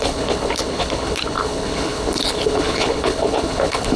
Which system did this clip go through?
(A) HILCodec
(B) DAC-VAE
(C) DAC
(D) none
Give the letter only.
A